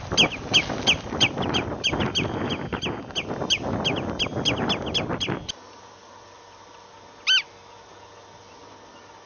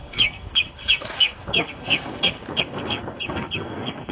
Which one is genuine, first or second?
first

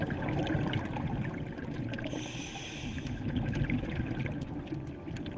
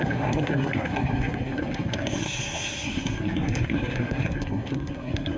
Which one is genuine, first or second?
first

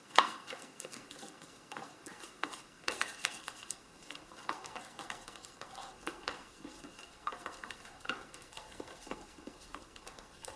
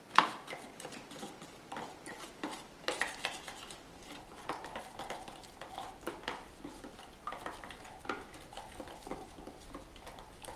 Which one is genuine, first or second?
second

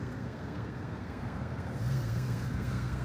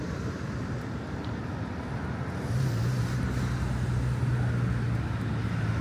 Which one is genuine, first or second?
second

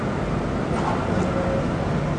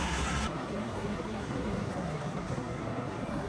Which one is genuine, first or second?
first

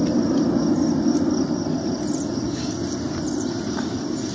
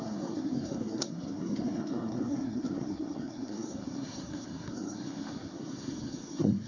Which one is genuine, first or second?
first